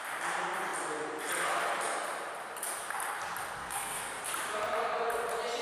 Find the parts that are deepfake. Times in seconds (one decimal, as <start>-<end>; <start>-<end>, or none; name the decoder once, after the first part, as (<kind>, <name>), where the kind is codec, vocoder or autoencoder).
3.6-4.2 (codec, SNAC)